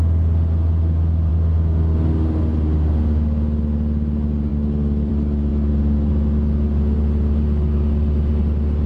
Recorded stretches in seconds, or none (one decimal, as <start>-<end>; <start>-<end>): 0.0-8.9